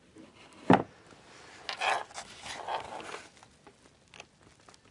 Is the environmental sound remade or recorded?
recorded